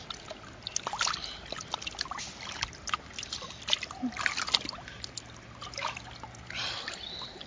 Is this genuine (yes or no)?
yes